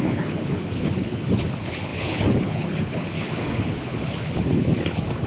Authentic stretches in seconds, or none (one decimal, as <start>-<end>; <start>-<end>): none